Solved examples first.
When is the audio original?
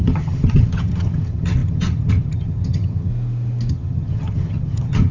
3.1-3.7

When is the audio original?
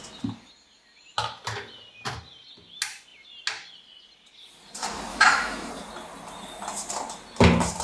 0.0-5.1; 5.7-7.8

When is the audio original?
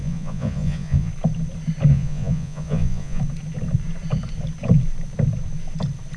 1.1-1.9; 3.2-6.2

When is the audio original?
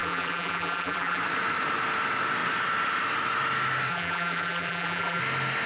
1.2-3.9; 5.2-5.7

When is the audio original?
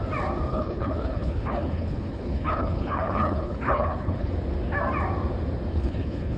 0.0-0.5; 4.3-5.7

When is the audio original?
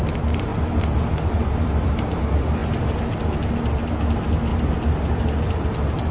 0.0-0.5; 2.2-4.5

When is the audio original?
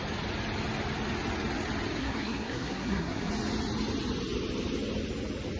0.0-2.0; 3.3-5.6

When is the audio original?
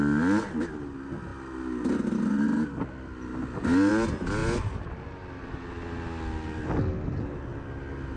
0.0-8.2